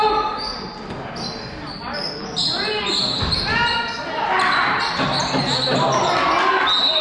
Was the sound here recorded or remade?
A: recorded